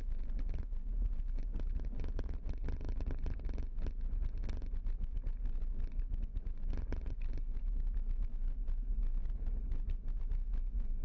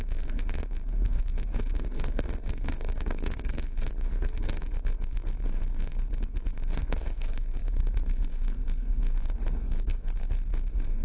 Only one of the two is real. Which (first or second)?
first